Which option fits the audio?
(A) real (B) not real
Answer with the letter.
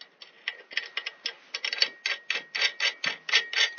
A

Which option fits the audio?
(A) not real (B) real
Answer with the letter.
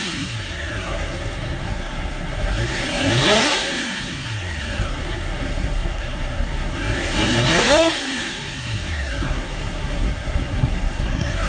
A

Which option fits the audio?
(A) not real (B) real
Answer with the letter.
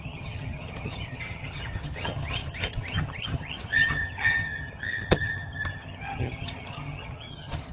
A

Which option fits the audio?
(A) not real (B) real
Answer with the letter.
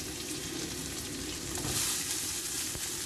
B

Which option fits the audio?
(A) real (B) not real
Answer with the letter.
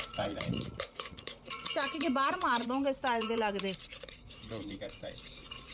B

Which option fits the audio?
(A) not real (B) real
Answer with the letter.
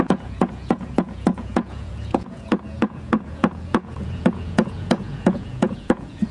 A